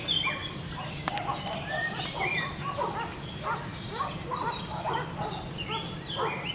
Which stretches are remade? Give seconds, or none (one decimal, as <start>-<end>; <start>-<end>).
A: none